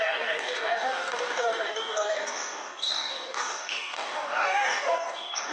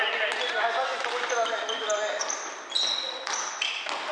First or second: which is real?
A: second